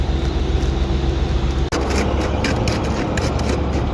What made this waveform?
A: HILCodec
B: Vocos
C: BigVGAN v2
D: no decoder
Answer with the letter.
D